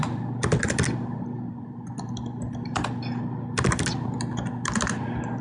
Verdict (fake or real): real